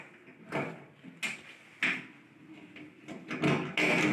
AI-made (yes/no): no